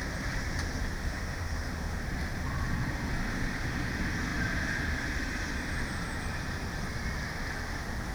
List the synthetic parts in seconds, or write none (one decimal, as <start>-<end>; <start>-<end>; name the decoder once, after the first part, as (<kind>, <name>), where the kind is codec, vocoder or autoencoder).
1.0-2.0 (autoencoder, DAC-VAE); 3.3-3.9